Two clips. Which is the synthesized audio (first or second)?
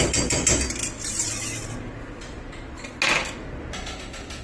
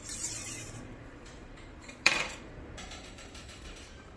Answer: second